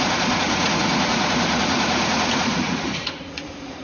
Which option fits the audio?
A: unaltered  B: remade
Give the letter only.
B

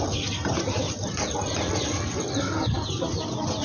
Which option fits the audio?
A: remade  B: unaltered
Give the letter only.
B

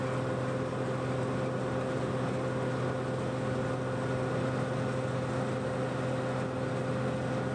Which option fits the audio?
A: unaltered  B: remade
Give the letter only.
A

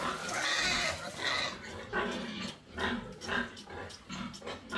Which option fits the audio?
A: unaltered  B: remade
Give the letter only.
A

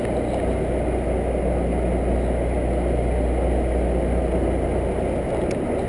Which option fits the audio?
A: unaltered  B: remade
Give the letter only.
A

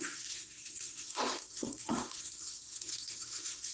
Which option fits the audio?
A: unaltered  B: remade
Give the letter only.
B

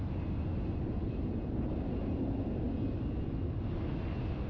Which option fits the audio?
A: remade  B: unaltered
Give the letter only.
B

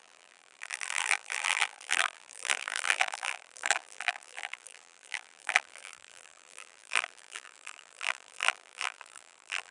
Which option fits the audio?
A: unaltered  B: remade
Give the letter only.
B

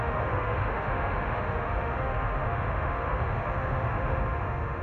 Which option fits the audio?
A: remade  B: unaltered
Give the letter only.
A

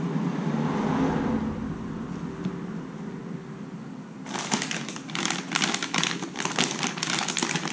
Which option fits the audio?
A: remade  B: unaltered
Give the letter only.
B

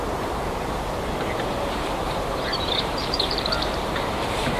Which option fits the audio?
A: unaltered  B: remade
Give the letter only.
B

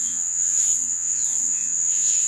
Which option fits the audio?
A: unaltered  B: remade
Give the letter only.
B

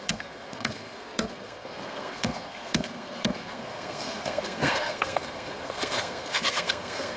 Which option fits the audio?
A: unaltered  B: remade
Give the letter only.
B